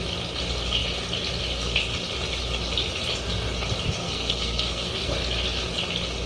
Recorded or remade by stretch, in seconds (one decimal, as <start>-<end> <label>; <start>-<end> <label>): 0.0-4.0 recorded; 4.0-5.1 remade; 5.1-6.3 recorded